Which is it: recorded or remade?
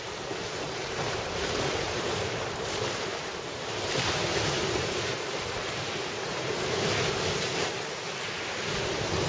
remade